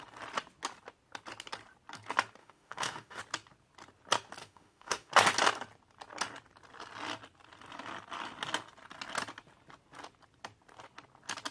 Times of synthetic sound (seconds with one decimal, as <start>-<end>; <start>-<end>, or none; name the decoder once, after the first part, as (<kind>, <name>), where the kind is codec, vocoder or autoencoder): 2.4-3.2 (autoencoder, DAC-VAE); 4.4-5.1